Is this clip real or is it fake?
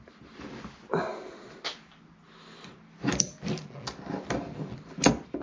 real